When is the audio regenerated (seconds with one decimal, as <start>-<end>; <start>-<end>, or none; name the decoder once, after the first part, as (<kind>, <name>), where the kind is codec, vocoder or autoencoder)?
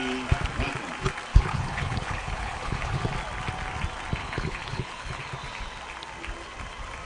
1.3-3.0 (codec, HILCodec); 4.2-5.2